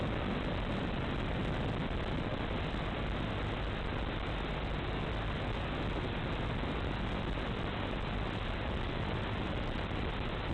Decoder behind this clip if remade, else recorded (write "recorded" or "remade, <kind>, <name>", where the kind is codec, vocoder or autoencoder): recorded